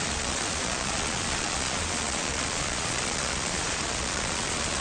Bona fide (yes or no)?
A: no